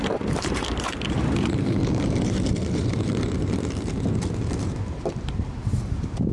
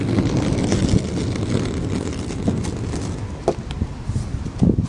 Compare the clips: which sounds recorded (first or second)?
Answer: second